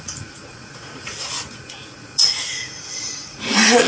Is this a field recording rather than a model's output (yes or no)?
no